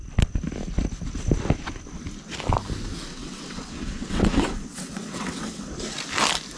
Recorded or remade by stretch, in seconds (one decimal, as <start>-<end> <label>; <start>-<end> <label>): 0.0-3.1 recorded; 3.1-5.7 remade; 5.7-6.6 recorded